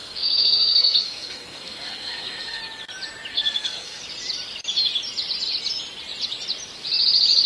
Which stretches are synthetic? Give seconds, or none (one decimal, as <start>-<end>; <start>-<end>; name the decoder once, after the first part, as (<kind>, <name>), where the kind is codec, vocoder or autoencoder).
0.0-2.6 (codec, SNAC); 3.3-4.0